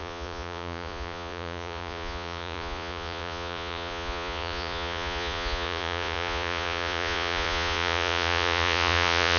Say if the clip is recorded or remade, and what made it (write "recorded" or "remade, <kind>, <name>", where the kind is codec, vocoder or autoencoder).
remade, vocoder, Vocos